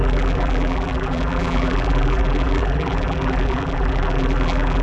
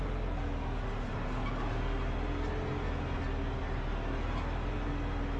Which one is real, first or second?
second